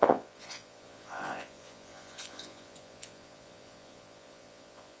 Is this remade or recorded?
remade